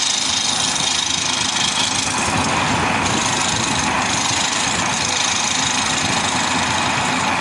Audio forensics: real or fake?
real